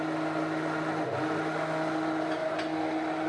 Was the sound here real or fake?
real